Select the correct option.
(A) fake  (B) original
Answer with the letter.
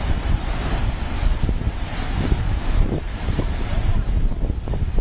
A